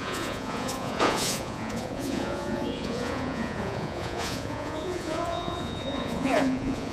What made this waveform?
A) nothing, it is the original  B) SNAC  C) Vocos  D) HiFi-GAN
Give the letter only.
C